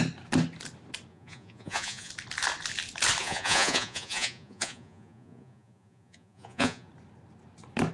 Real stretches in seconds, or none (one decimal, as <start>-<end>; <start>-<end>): 0.0-1.1; 2.1-3.2; 6.9-7.9